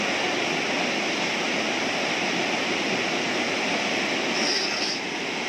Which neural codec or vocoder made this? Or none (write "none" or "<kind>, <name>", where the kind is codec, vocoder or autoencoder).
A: none